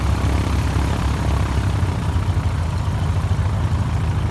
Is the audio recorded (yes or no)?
no